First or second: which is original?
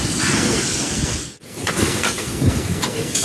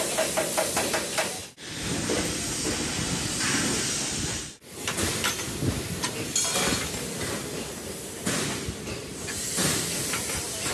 second